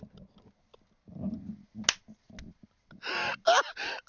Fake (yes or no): no